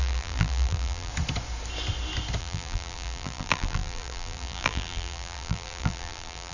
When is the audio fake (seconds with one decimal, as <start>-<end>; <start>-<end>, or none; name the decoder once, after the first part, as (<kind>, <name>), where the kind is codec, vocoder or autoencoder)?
0.0-1.1 (vocoder, BigVGAN v2); 2.4-6.5